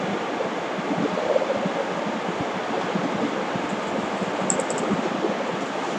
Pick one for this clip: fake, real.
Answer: real